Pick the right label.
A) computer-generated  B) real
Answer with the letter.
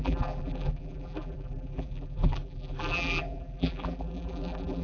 A